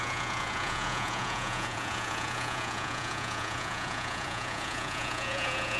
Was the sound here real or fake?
fake